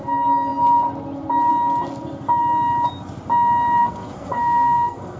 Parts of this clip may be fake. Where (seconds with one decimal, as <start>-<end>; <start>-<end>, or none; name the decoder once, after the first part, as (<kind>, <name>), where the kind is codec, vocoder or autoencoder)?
3.8-5.2 (codec, SNAC)